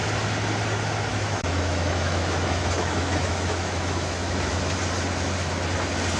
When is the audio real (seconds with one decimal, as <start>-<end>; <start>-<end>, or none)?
0.0-1.1; 4.8-6.2